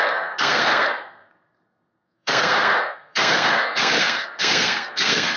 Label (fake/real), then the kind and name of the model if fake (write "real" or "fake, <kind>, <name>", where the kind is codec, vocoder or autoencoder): fake, codec, SNAC